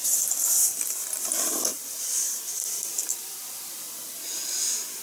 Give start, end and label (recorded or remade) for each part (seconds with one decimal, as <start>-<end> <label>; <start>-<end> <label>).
0.0-5.0 recorded